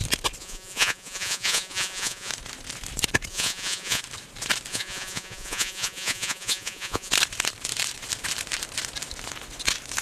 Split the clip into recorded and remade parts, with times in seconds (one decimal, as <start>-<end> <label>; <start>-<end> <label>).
0.0-0.4 recorded; 0.4-2.3 remade; 2.3-3.3 recorded; 3.3-4.0 remade; 4.0-4.7 recorded; 4.7-7.1 remade; 7.1-10.0 recorded